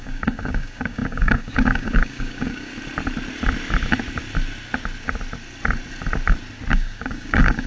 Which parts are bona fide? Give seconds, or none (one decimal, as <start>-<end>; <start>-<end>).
2.7-6.7

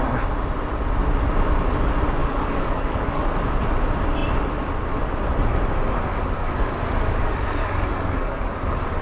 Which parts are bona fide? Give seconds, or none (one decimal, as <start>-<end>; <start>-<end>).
0.0-2.2; 3.2-7.6; 8.6-9.0